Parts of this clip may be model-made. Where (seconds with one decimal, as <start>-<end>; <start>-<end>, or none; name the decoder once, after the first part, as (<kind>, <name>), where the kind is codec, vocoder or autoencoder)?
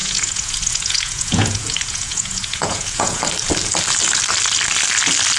0.0-3.2 (vocoder, Vocos)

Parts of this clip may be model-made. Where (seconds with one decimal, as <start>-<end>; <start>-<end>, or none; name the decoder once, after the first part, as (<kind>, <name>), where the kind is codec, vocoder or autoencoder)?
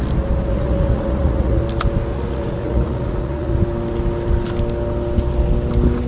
0.5-1.6 (vocoder, Vocos); 2.1-3.6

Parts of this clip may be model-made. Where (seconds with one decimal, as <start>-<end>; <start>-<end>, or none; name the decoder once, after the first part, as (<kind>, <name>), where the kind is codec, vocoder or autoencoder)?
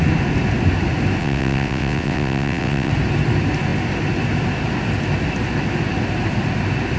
1.2-2.9 (vocoder, WaveNeXt)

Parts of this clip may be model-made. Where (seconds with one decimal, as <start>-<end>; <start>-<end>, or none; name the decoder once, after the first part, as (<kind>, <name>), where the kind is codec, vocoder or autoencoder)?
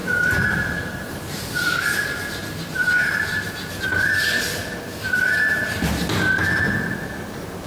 none